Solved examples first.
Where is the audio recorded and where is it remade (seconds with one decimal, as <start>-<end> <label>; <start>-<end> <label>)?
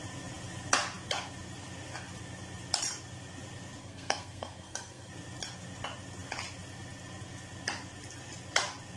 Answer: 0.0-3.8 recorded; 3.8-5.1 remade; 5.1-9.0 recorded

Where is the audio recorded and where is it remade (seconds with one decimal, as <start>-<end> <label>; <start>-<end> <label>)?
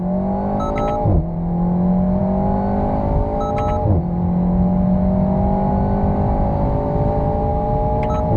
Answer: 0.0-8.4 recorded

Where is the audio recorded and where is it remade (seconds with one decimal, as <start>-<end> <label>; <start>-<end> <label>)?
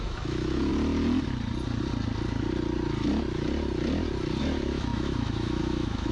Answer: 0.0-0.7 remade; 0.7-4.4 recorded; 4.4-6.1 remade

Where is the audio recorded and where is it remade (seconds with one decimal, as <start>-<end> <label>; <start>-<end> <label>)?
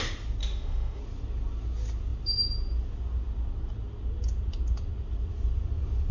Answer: 0.0-0.4 recorded; 0.4-1.0 remade; 1.0-6.1 recorded